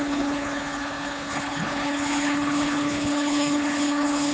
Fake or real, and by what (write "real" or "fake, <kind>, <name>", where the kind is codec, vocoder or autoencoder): fake, codec, HILCodec